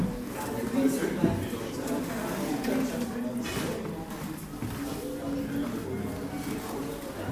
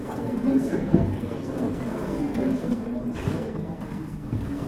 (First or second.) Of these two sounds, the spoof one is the second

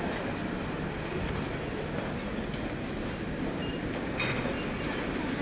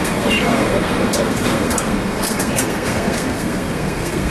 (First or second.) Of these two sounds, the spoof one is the second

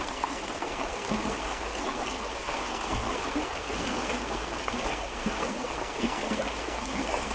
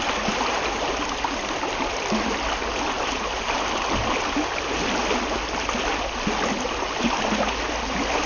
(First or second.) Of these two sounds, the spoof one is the first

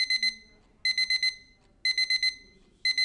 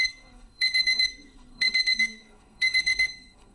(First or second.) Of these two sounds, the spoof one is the second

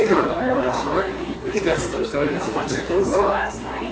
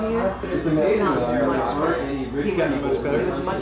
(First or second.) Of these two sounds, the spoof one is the first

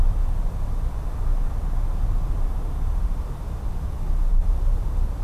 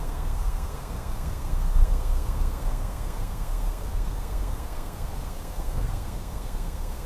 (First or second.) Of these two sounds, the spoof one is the second